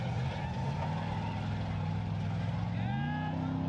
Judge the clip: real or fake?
real